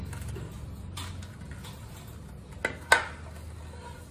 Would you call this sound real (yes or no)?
yes